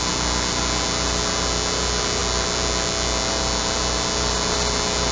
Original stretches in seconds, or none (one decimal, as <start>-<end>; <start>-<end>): 0.0-5.1